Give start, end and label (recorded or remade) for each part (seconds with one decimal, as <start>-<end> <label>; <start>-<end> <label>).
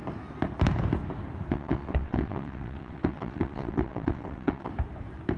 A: 0.0-1.5 recorded; 1.5-4.7 remade; 4.7-5.4 recorded